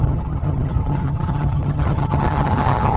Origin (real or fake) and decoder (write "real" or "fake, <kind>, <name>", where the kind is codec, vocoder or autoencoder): fake, vocoder, HiFi-GAN